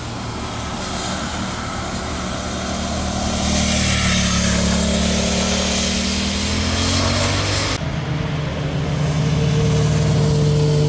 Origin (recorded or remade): recorded